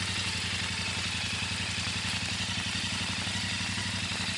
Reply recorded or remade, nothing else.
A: recorded